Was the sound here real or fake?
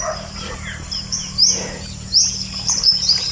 real